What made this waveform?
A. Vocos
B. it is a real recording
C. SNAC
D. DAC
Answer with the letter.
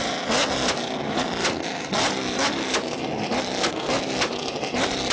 B